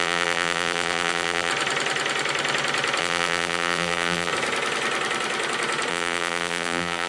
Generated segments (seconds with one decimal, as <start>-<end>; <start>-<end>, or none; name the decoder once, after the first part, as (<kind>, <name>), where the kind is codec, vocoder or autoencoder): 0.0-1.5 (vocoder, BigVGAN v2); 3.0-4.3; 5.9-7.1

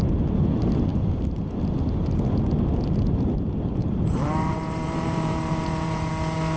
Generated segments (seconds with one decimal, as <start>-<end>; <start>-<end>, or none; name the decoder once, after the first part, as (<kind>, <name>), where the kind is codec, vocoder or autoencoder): 3.8-6.1 (vocoder, BigVGAN v2)

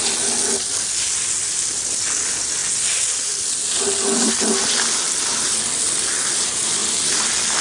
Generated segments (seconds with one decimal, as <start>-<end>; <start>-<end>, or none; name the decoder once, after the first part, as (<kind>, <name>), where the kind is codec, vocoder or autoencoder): none

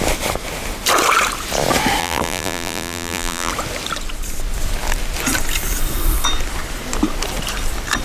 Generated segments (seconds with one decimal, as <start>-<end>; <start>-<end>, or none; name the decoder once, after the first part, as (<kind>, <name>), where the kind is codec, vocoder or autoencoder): 2.0-3.5 (vocoder, BigVGAN v2)

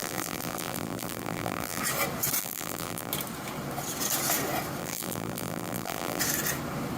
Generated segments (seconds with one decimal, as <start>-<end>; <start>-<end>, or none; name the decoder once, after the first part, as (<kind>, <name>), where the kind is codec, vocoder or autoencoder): 0.0-1.8 (vocoder, BigVGAN v2); 2.4-3.1; 4.8-6.2